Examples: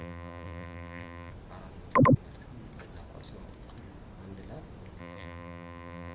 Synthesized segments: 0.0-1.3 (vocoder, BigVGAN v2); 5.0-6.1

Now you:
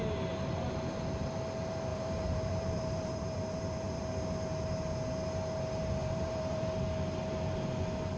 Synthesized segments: 1.9-4.0 (vocoder, BigVGAN v2); 6.0-6.7

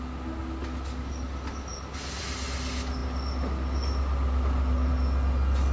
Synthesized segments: 1.7-2.2 (vocoder, BigVGAN v2)

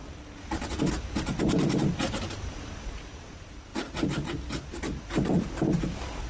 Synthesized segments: 0.9-6.3 (vocoder, BigVGAN v2)

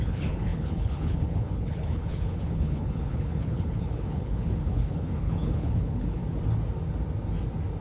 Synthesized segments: 0.0-6.2 (codec, HILCodec)

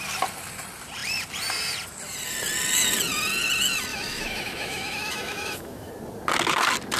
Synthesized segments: 3.9-5.9 (autoencoder, DAC-VAE)

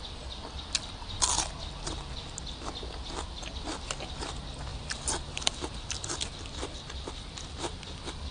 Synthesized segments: 4.7-5.9 (vocoder, BigVGAN v2)

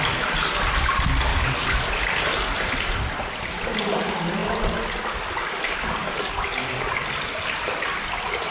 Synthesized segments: 1.3-1.9 (codec, DAC); 6.0-6.8